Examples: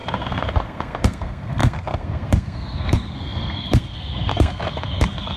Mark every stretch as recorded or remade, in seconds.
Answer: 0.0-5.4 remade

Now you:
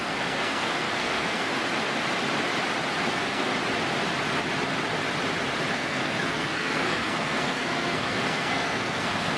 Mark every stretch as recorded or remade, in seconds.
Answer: 0.0-1.5 remade; 1.5-3.1 recorded; 3.1-3.5 remade; 3.5-5.7 recorded; 5.7-9.4 remade

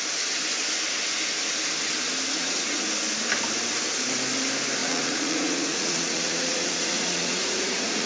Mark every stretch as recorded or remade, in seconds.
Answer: 0.0-2.4 recorded; 2.4-2.9 remade; 2.9-4.8 recorded; 4.8-8.1 remade